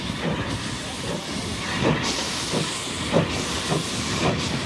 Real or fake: real